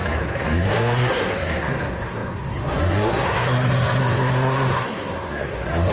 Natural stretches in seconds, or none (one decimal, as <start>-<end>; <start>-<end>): none